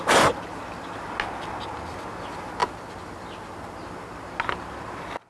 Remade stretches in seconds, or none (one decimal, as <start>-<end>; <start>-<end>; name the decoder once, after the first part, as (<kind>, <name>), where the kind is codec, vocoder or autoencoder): none